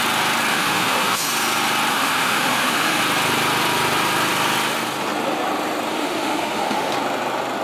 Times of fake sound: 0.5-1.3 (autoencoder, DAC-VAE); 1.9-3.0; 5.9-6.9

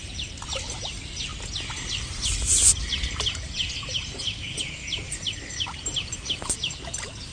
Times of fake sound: none

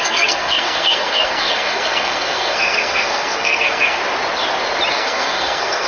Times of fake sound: 0.0-4.0 (codec, SNAC); 4.9-5.9

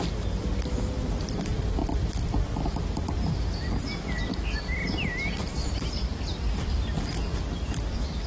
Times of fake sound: none